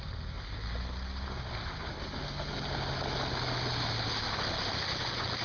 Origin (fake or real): real